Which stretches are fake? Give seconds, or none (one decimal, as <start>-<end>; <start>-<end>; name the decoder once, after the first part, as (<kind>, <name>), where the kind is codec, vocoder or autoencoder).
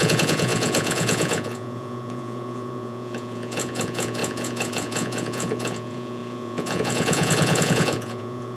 0.0-8.6 (vocoder, Vocos)